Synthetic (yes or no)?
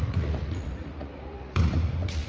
yes